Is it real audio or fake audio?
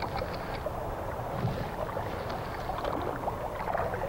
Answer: real